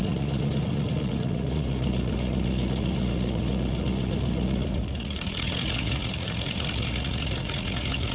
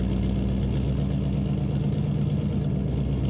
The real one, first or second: second